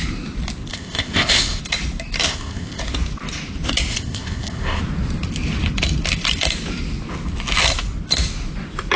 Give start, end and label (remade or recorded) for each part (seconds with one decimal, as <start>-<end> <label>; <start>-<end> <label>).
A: 0.0-0.7 recorded; 0.7-1.6 remade; 1.6-2.3 recorded; 2.3-2.8 remade; 2.8-3.9 recorded; 3.9-4.8 remade; 4.8-9.0 recorded